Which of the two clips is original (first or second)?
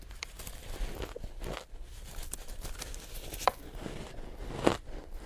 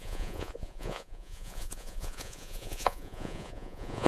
first